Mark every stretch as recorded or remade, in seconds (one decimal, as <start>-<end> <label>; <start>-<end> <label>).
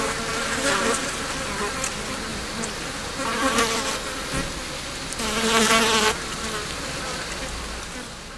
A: 0.0-2.3 recorded; 2.3-3.6 remade; 3.6-8.4 recorded